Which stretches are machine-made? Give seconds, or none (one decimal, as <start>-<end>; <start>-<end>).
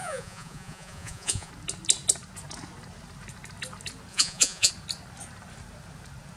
0.0-1.5; 4.1-4.7